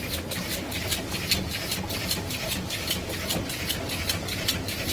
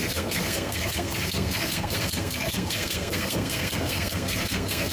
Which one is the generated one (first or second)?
second